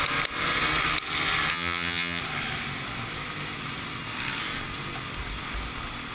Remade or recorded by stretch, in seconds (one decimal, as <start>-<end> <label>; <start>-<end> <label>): 0.0-1.5 recorded; 1.5-2.2 remade; 2.2-6.1 recorded